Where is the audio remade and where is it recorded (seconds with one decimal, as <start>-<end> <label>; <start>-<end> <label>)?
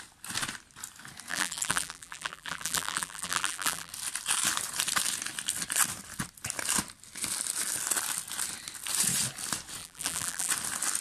0.0-1.3 recorded; 1.3-3.9 remade; 3.9-9.8 recorded; 9.8-10.5 remade; 10.5-11.0 recorded